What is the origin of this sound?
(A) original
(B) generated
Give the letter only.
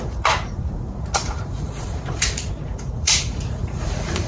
B